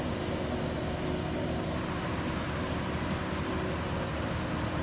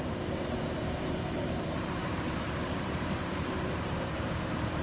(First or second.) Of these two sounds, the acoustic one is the first